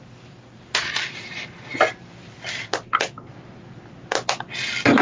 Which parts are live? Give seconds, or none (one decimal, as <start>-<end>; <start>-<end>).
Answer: 0.0-5.0